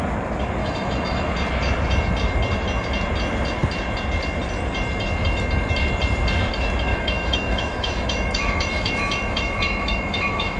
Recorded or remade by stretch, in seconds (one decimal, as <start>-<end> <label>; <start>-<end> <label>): 0.0-0.6 recorded; 0.6-1.3 remade; 1.3-6.9 recorded; 6.9-10.6 remade